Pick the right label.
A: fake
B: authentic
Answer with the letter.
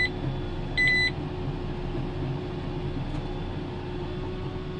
B